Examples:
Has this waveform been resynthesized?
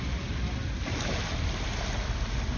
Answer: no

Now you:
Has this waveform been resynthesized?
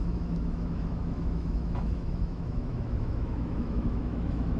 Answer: yes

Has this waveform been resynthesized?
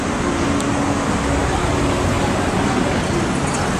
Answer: no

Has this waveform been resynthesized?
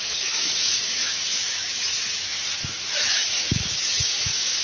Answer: yes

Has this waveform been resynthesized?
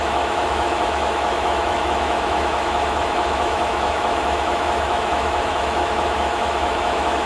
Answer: yes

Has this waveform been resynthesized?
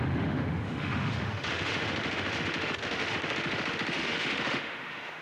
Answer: yes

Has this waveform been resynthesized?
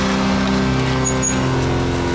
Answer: no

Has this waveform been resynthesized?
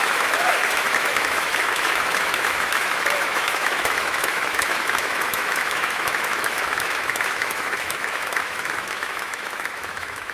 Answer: yes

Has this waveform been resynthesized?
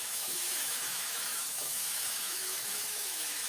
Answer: yes